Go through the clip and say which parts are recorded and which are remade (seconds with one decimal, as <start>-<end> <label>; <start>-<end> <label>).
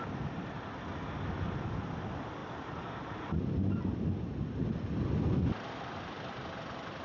0.0-7.0 recorded